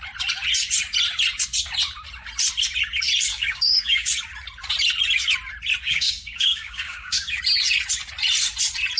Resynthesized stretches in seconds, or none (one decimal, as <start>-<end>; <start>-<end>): 3.3-4.1; 5.8-7.4